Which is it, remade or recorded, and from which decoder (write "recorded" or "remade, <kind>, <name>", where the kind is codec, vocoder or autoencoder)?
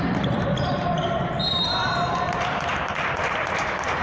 remade, vocoder, BigVGAN v2